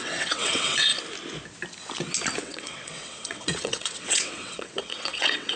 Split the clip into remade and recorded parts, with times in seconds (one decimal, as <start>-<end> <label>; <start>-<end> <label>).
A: 0.0-0.9 remade; 0.9-2.4 recorded; 2.4-5.6 remade